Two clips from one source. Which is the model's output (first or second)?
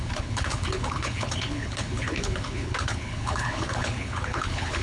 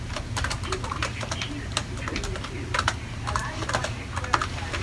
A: first